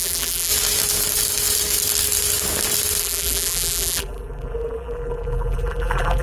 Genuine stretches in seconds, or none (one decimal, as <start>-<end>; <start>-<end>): 0.5-3.0